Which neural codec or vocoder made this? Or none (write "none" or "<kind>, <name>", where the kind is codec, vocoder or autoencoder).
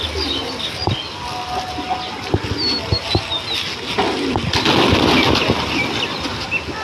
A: none